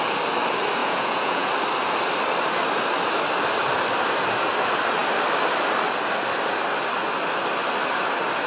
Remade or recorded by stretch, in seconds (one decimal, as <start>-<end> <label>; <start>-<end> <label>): 0.0-0.8 recorded; 0.8-1.5 remade; 1.5-8.5 recorded

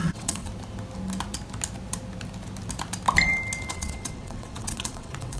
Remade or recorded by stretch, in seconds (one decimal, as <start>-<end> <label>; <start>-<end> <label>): 0.0-0.5 remade; 0.5-3.7 recorded; 3.7-5.4 remade

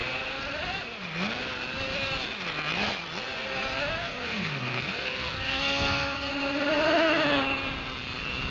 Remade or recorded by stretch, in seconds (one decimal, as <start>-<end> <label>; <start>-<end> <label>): 0.0-4.0 recorded; 4.0-6.3 remade; 6.3-8.5 recorded

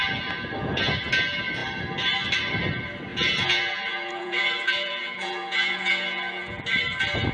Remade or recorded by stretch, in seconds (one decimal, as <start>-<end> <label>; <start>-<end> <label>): 0.0-3.1 recorded; 3.1-6.6 remade; 6.6-7.3 recorded

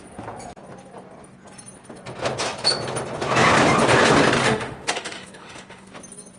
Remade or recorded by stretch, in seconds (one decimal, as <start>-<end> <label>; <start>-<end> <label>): 0.0-4.4 recorded; 4.4-5.9 remade; 5.9-6.4 recorded

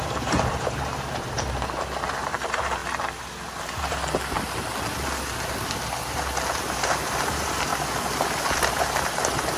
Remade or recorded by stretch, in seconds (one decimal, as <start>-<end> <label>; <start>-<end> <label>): 0.0-2.8 remade; 2.8-3.6 recorded; 3.6-4.0 remade; 4.0-6.6 recorded; 6.6-7.7 remade; 7.7-8.7 recorded; 8.7-9.6 remade

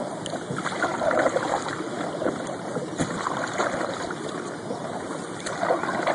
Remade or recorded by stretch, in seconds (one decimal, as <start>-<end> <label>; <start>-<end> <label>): 0.0-6.1 recorded

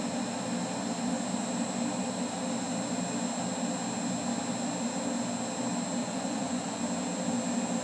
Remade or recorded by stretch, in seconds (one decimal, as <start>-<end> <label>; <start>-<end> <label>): 0.0-6.0 recorded; 6.0-6.8 remade; 6.8-7.8 recorded